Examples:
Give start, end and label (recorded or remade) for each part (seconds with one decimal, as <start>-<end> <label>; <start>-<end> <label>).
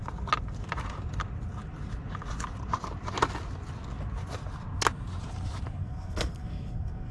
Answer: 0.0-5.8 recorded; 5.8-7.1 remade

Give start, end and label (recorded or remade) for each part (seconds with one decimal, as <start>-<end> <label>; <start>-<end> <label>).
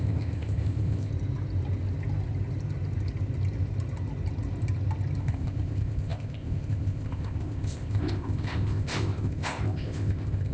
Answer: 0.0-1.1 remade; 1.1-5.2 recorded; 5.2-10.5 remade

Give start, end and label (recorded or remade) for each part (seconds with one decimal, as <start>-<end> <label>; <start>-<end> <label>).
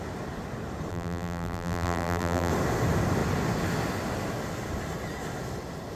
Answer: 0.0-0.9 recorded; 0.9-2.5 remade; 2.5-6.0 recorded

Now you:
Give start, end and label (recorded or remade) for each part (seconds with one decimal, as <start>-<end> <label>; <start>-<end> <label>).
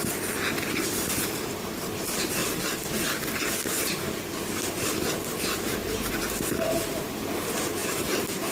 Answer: 0.0-2.4 remade; 2.4-5.4 recorded; 5.4-6.2 remade; 6.2-6.9 recorded; 6.9-8.5 remade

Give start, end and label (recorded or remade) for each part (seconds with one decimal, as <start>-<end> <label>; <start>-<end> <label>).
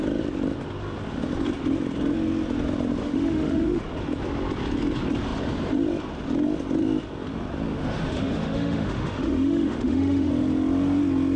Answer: 0.0-3.0 recorded; 3.0-3.8 remade; 3.8-7.7 recorded; 7.7-10.3 remade; 10.3-11.4 recorded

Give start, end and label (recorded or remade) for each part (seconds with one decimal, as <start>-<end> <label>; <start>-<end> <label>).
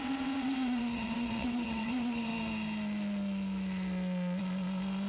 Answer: 0.0-2.3 remade; 2.3-5.1 recorded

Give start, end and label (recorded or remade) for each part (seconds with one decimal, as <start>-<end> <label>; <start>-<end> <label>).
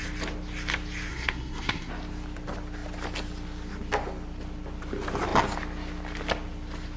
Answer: 0.0-1.1 recorded; 1.1-1.9 remade; 1.9-7.0 recorded